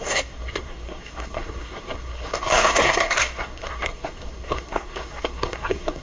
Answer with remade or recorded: remade